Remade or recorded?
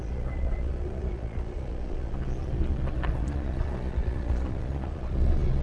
remade